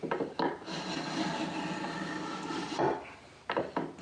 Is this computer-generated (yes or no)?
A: no